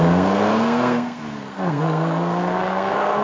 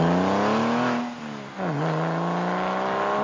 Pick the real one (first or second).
second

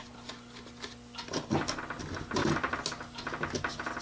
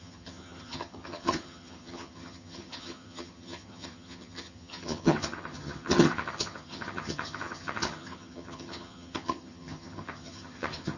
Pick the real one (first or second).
first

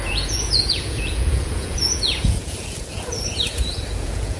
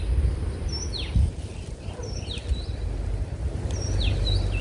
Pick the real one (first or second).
second